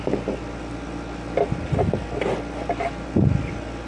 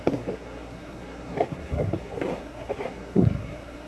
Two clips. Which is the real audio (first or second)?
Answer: first